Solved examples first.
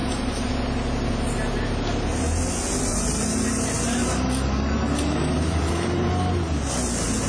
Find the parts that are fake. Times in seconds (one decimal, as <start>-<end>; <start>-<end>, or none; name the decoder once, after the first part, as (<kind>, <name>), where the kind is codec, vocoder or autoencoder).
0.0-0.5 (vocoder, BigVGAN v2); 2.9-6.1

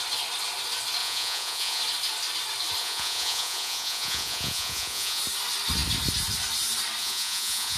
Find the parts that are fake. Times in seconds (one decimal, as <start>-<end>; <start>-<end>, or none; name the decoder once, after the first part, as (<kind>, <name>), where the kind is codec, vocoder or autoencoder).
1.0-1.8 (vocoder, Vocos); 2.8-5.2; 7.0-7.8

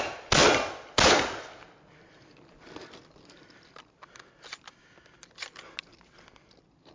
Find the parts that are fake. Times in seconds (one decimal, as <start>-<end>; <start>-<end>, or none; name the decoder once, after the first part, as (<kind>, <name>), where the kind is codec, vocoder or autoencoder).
none

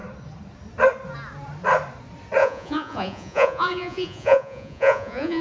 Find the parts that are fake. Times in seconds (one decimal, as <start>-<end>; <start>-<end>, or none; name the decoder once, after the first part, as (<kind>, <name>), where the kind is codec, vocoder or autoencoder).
2.4-5.4 (vocoder, Vocos)